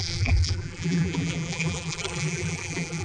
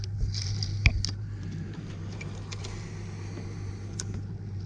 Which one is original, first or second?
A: second